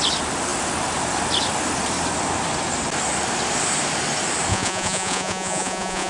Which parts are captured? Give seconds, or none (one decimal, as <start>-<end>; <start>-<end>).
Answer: 0.0-4.5